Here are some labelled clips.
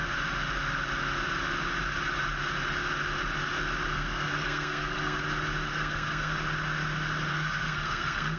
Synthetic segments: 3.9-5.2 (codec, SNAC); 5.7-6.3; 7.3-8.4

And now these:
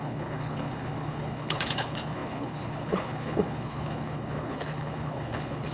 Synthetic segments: 0.0-5.7 (codec, HILCodec)

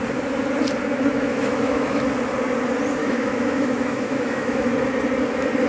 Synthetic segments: 1.1-2.0 (autoencoder, DAC-VAE); 3.0-4.7

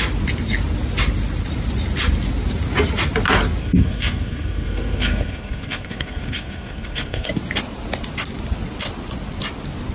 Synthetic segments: 3.6-7.3 (codec, SNAC)

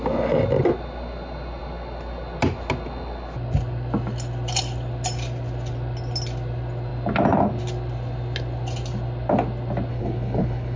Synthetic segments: 9.9-10.8 (codec, HILCodec)

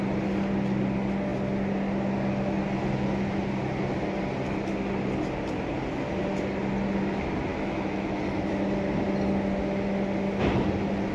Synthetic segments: 7.5-8.2 (autoencoder, DAC-VAE)

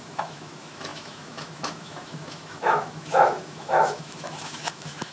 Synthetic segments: 0.0-5.1 (autoencoder, DAC-VAE)